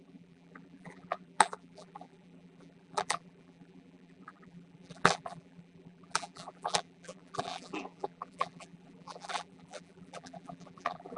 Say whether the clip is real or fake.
fake